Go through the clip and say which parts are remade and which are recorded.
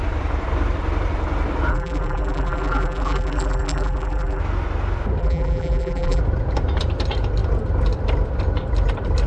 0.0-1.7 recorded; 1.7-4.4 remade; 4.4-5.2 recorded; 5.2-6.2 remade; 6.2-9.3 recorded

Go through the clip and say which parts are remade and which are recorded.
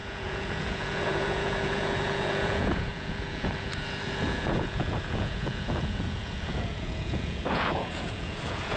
0.0-8.8 remade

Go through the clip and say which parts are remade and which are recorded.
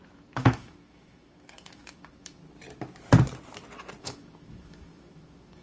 0.0-2.4 remade; 2.4-4.0 recorded; 4.0-5.6 remade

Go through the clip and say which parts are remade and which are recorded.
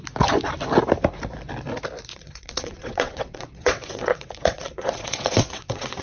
0.0-2.1 recorded; 2.1-6.0 remade